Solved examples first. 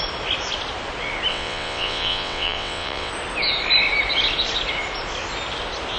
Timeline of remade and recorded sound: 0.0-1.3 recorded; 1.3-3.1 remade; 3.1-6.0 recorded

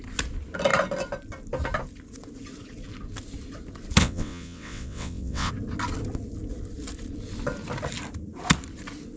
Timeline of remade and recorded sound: 0.0-4.0 recorded; 4.0-5.5 remade; 5.5-9.2 recorded

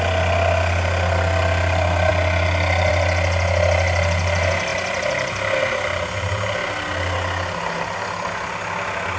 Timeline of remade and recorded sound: 0.0-9.2 recorded

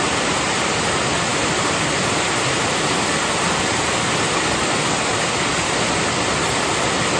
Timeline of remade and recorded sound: 0.0-7.2 recorded

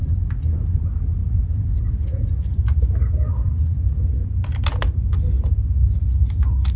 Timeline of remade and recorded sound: 0.0-6.8 recorded

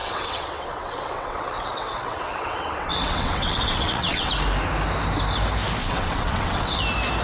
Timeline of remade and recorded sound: 0.0-4.3 remade; 4.3-5.8 recorded; 5.8-6.8 remade; 6.8-7.2 recorded

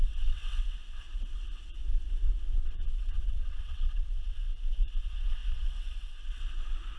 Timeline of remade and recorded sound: 0.0-7.0 remade